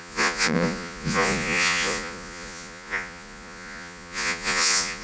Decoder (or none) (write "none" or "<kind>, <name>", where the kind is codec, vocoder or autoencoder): vocoder, Vocos